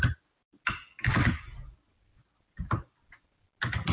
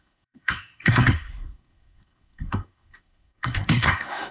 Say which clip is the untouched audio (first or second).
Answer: first